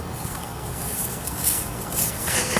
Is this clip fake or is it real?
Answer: fake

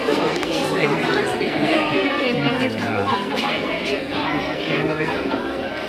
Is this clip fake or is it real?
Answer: fake